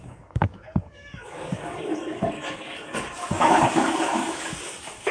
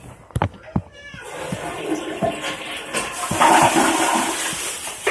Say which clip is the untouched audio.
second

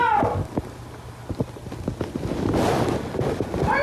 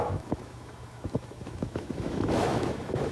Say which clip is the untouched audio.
first